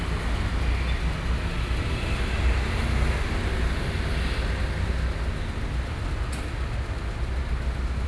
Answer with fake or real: real